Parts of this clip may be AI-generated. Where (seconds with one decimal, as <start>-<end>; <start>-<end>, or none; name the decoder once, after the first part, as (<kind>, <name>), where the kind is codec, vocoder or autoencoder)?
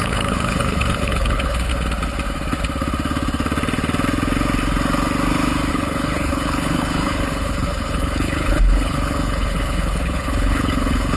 0.0-1.7 (codec, HILCodec); 5.7-11.2